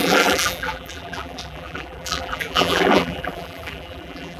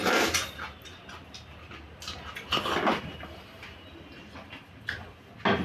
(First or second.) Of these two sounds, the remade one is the first